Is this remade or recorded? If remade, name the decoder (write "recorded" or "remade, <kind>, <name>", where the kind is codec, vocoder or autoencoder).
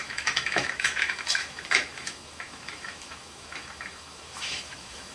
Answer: remade, autoencoder, DAC-VAE